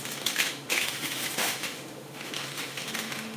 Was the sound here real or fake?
fake